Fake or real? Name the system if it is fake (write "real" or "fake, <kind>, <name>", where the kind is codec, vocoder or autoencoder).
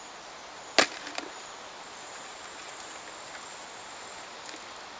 real